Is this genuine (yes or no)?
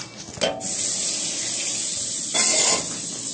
yes